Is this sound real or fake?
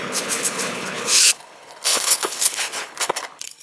fake